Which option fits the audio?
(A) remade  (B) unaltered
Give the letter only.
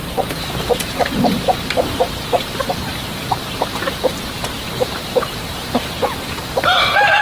A